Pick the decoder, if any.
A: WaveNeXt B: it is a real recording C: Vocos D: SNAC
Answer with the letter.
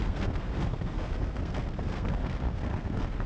D